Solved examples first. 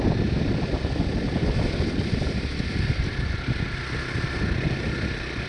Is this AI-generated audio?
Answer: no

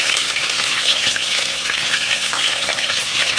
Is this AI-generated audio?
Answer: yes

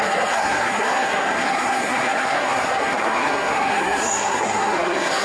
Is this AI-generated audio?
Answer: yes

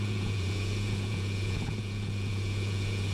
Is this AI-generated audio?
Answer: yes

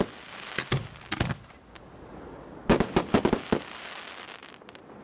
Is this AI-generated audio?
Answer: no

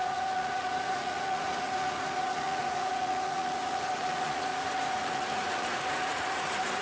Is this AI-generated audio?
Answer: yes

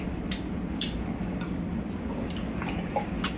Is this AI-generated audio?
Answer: no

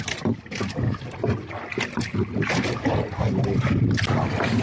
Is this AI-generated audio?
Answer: no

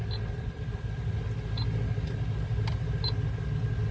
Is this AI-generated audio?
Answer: no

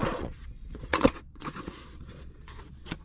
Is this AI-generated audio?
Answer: yes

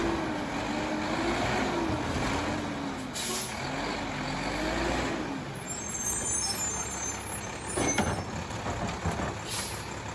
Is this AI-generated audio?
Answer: no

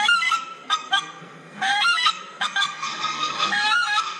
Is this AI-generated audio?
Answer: yes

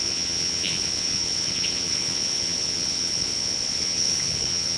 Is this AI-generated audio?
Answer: yes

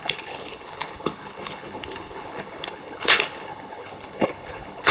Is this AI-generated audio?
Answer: yes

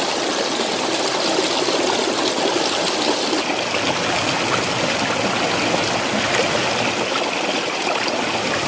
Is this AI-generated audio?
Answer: no